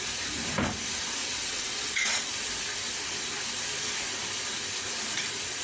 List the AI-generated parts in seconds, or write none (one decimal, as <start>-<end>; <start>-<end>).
1.2-2.3